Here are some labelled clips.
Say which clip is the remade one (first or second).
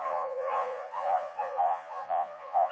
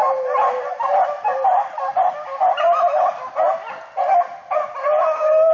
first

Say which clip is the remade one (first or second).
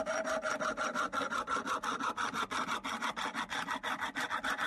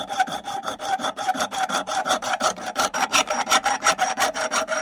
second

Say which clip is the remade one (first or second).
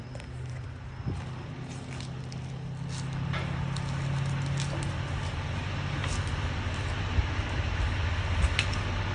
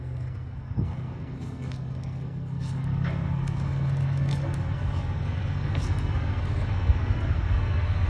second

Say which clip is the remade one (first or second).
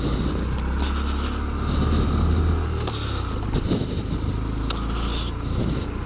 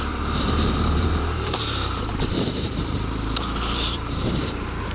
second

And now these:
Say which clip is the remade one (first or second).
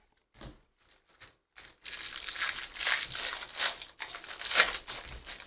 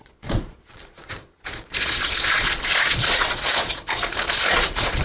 second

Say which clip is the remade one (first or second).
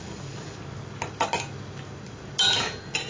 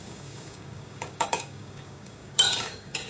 second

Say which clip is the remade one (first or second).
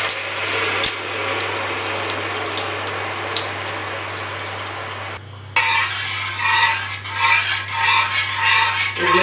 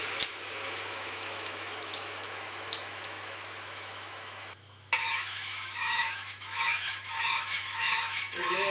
second